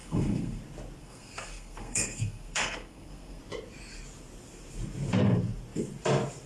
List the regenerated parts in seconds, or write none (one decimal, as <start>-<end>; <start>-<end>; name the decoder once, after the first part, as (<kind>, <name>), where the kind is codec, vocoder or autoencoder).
0.0-0.6 (codec, SNAC); 1.0-3.4